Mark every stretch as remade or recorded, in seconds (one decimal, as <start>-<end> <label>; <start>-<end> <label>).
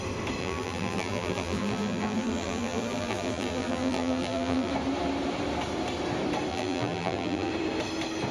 0.0-0.4 recorded; 0.4-4.7 remade; 4.7-6.5 recorded; 6.5-7.5 remade; 7.5-8.3 recorded